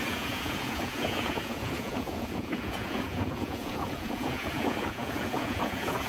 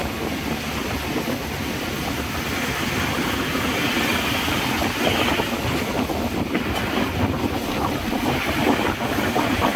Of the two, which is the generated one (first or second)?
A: first